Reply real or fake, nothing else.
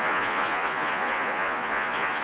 fake